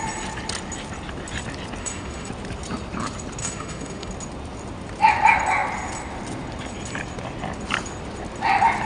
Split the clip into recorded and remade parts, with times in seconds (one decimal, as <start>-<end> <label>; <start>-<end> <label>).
0.0-1.8 recorded; 1.8-2.3 remade; 2.3-3.4 recorded; 3.4-4.1 remade; 4.1-8.9 recorded